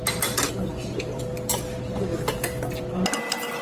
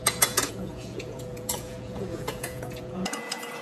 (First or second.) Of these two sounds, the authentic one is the first